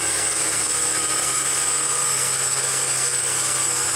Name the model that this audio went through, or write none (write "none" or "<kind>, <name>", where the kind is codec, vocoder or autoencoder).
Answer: codec, SNAC